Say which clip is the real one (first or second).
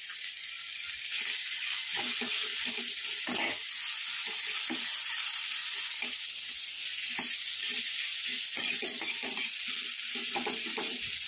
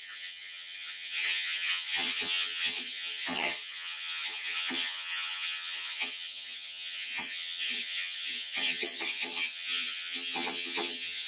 first